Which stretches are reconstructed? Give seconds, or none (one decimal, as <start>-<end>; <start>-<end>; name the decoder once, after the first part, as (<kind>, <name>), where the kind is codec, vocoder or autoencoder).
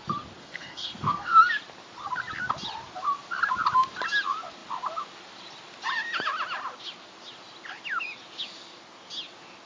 0.4-1.4 (codec, SNAC)